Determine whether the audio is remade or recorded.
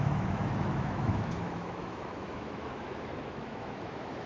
remade